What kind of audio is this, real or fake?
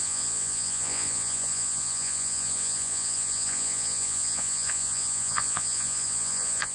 fake